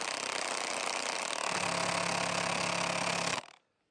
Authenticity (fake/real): real